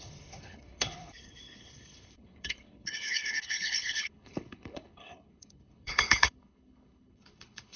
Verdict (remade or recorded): remade